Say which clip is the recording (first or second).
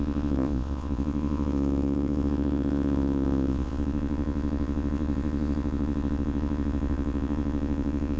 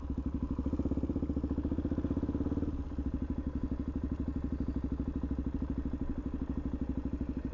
second